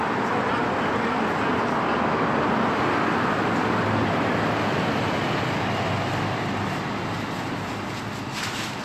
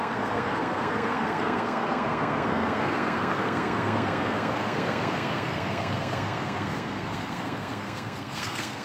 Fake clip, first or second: second